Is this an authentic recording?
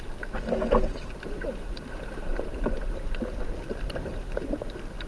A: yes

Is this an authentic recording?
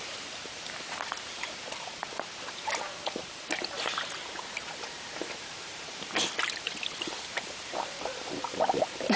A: no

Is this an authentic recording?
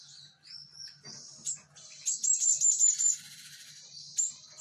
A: no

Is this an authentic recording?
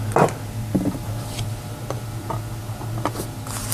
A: yes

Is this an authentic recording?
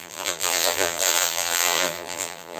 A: no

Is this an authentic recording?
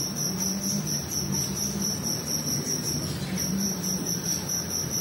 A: no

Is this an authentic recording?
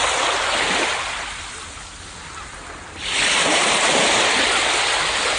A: yes